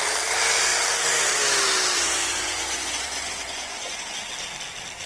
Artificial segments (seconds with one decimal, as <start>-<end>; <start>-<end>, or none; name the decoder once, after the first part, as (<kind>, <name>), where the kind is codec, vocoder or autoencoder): 2.2-4.3 (vocoder, Vocos)